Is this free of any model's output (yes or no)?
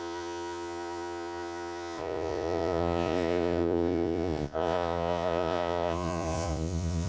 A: no